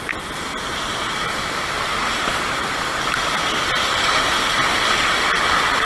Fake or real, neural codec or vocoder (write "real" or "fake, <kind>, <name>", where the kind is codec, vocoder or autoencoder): real